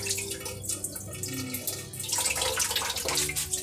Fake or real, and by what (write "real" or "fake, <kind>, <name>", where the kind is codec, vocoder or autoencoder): real